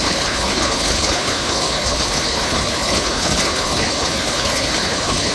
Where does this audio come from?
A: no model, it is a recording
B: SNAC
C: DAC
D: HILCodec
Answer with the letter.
D